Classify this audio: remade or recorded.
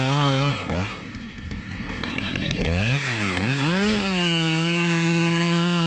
remade